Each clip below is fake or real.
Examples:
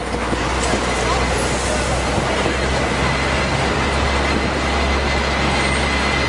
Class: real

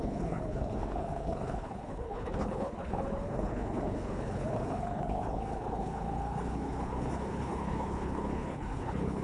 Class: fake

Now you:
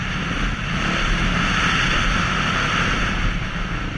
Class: real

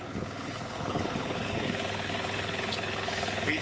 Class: fake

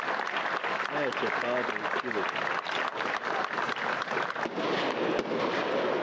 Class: real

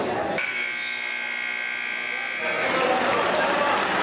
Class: real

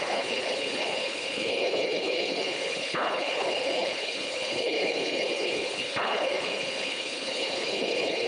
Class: fake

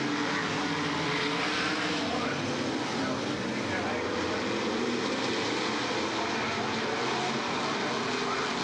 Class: real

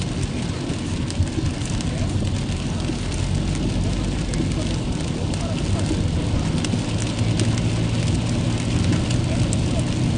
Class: real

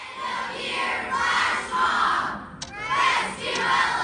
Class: real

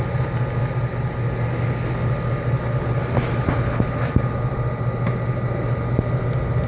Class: real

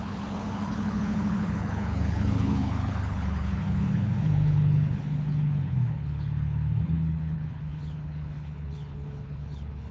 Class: fake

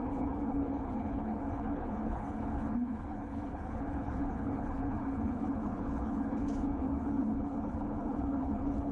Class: fake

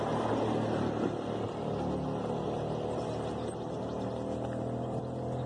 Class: real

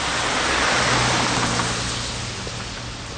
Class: real